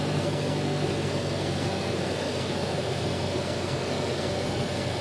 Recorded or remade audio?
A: remade